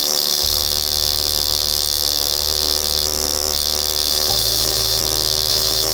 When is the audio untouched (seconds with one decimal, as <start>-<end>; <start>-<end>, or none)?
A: 0.6-4.1; 5.0-5.5